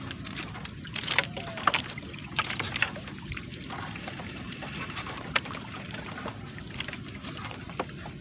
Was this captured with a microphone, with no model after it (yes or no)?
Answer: no